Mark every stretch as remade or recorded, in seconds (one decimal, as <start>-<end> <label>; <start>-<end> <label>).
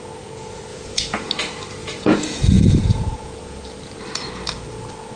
0.0-0.7 recorded; 0.7-1.3 remade; 1.3-1.8 recorded; 1.8-3.6 remade; 3.6-5.2 recorded